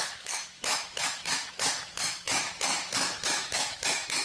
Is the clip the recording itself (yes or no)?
no